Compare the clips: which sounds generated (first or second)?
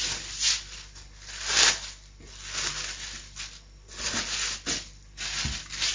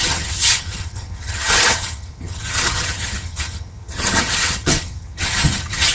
second